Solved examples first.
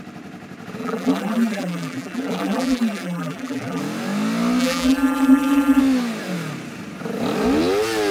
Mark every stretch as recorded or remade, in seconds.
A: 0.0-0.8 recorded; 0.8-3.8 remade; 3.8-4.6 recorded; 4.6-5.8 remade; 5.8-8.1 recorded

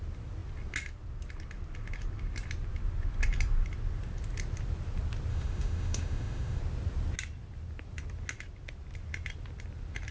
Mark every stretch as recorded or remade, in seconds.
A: 0.0-5.3 recorded; 5.3-6.6 remade; 6.6-10.1 recorded

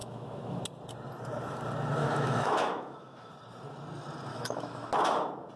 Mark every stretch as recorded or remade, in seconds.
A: 0.0-0.6 remade; 0.6-2.0 recorded; 2.0-3.3 remade; 3.3-4.3 recorded; 4.3-4.9 remade; 4.9-5.6 recorded